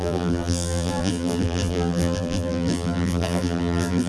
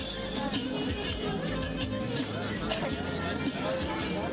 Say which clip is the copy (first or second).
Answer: first